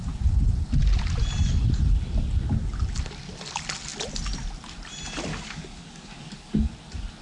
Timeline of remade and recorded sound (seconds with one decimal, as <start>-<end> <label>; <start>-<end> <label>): 0.0-5.3 recorded; 5.3-6.7 remade; 6.7-7.2 recorded